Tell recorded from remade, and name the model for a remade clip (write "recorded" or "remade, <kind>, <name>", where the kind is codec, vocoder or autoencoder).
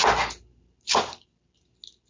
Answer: recorded